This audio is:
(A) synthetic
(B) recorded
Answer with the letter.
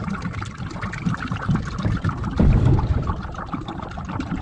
A